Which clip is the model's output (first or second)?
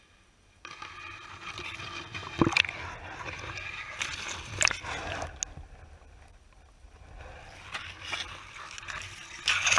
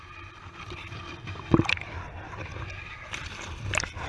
second